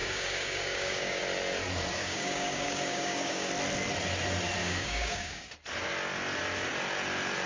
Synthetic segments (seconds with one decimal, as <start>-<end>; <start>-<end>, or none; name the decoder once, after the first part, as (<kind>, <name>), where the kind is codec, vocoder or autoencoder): 0.0-1.2 (codec, DAC); 2.0-3.5; 4.6-5.5